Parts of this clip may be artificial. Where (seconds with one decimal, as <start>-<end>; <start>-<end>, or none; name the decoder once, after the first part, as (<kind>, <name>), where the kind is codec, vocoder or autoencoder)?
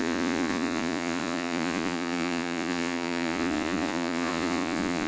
0.0-5.1 (vocoder, Vocos)